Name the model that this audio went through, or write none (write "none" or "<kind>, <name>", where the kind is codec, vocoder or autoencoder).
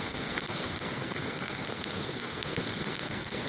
codec, SNAC